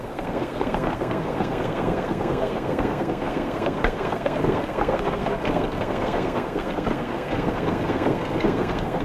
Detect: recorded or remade remade